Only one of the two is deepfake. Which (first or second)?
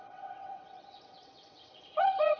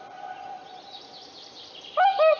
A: first